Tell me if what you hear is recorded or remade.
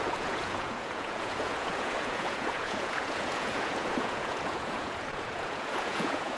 remade